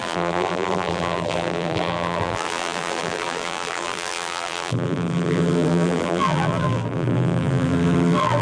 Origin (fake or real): fake